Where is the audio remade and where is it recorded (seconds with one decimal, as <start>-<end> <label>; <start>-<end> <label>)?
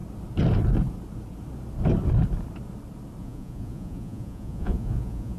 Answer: 0.0-3.2 recorded; 3.2-5.4 remade